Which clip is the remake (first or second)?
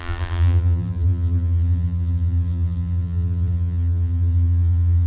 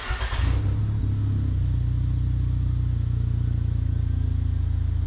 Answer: first